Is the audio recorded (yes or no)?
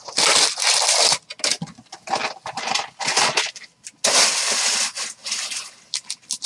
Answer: yes